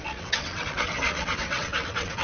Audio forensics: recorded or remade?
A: remade